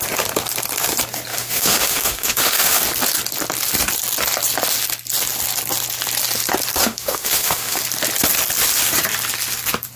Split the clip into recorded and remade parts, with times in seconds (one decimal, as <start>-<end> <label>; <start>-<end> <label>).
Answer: 0.0-1.3 recorded; 1.3-2.8 remade; 2.8-6.8 recorded; 6.8-7.8 remade; 7.8-10.0 recorded